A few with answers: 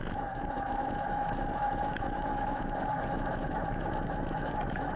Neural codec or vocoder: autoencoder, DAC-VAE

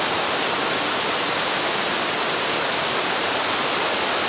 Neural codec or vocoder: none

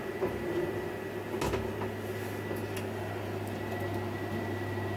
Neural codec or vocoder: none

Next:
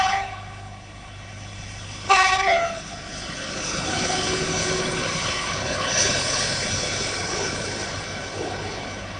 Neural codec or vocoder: codec, HILCodec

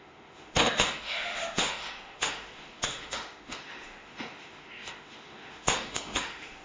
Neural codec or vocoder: autoencoder, DAC-VAE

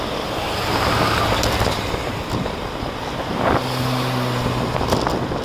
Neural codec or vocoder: none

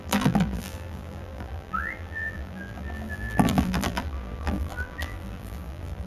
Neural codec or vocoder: vocoder, BigVGAN v2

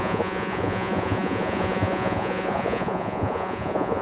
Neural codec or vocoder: vocoder, Vocos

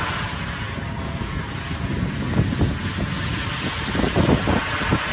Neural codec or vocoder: none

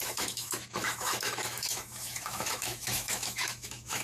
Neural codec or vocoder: autoencoder, DAC-VAE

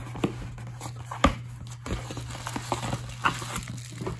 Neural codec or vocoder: none